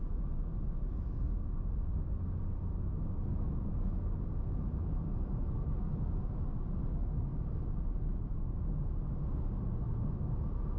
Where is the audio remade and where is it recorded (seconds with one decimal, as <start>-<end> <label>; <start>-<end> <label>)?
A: 0.0-10.8 recorded